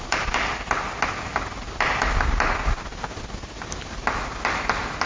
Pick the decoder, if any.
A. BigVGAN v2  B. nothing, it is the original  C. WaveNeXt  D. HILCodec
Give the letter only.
B